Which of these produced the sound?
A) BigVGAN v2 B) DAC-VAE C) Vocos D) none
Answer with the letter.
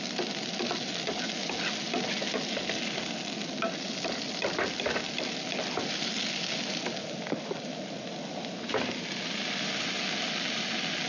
D